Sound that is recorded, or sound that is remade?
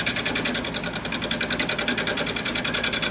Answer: recorded